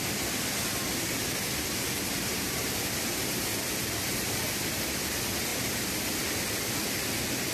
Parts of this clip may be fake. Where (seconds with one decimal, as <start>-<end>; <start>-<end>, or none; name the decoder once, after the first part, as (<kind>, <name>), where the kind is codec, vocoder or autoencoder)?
2.3-2.8 (vocoder, BigVGAN v2)